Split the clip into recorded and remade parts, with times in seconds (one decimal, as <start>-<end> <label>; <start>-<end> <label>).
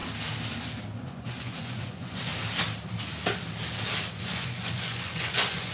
0.0-1.0 recorded; 1.0-2.3 remade; 2.3-4.1 recorded; 4.1-5.7 remade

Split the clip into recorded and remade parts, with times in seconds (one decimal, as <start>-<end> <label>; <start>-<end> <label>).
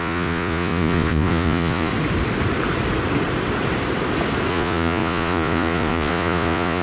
0.0-1.9 remade; 1.9-4.5 recorded; 4.5-6.8 remade